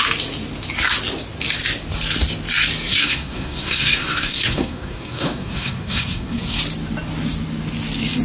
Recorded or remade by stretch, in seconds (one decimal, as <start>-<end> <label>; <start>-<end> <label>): 0.0-2.9 recorded; 2.9-6.6 remade; 6.6-8.2 recorded